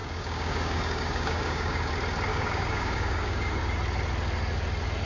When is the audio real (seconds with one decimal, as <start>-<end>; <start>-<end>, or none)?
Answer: 1.9-2.3; 3.6-5.1